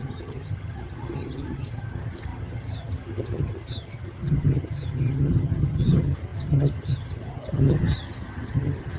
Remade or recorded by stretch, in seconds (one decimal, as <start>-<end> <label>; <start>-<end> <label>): 0.0-9.0 remade